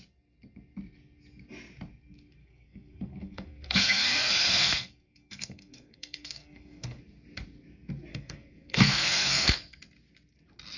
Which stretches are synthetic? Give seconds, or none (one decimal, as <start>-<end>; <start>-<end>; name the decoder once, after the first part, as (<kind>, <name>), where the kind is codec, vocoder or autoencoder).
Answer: 2.4-7.0 (codec, SNAC); 8.1-9.8